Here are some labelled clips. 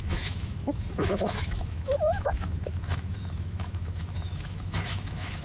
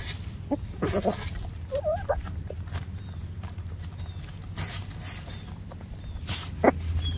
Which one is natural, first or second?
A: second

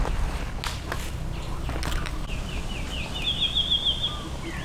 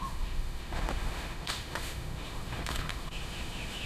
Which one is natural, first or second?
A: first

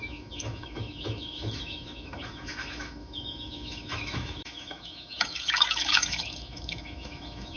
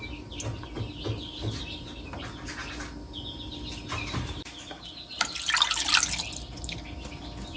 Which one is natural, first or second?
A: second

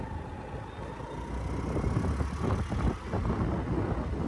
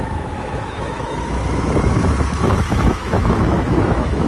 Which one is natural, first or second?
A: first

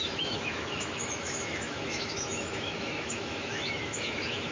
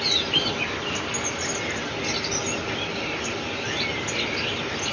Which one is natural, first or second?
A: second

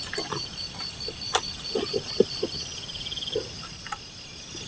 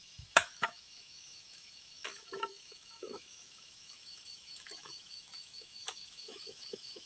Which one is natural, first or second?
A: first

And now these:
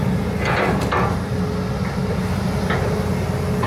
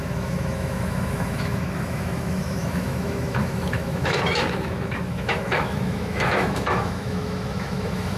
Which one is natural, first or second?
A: first